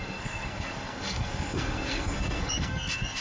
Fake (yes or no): yes